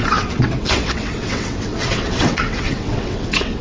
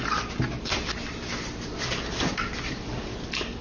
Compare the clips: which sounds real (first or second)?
second